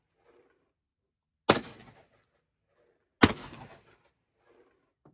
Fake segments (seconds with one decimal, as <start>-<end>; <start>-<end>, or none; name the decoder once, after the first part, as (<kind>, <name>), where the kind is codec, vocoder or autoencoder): none